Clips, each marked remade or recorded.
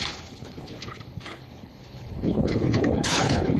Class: remade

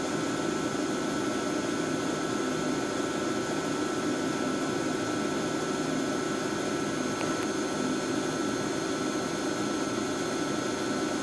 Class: recorded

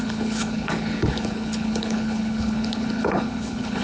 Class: remade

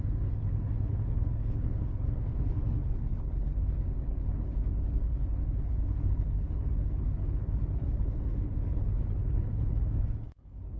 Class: remade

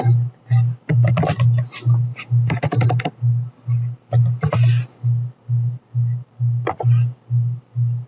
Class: recorded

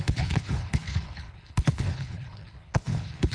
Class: remade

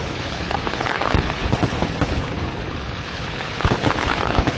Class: remade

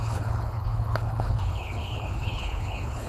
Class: remade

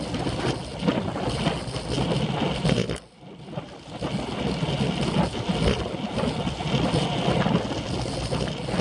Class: recorded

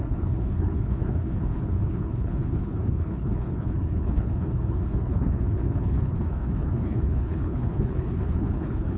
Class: remade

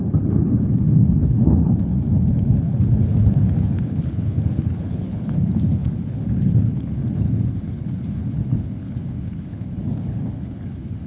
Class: remade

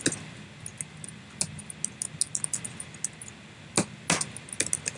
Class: recorded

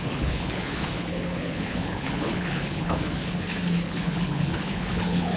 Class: remade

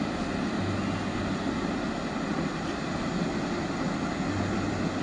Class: recorded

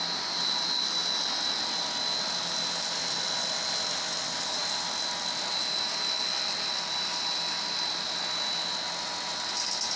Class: recorded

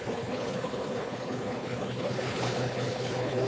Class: remade